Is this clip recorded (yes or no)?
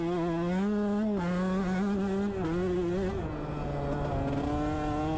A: yes